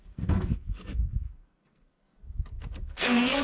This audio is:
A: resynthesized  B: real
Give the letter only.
A